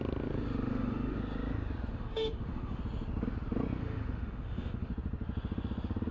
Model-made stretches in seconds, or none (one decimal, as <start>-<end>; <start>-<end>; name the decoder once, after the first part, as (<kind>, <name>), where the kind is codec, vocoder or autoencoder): 0.7-1.2 (autoencoder, DAC-VAE); 1.9-2.8; 3.8-4.9